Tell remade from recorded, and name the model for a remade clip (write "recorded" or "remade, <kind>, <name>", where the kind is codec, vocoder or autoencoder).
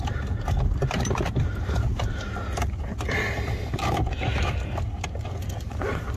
recorded